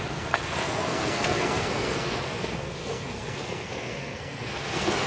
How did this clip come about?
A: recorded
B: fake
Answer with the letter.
B